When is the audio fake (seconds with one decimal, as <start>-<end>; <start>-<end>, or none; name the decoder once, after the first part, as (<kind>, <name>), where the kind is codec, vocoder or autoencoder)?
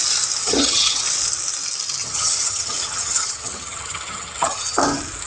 0.4-1.0 (vocoder, HiFi-GAN); 2.0-4.8